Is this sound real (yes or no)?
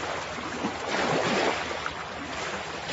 yes